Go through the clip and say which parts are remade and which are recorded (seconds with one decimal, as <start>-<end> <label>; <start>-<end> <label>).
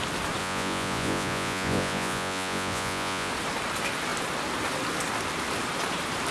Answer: 0.0-0.4 recorded; 0.4-3.3 remade; 3.3-6.3 recorded